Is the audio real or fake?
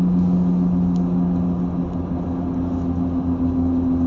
real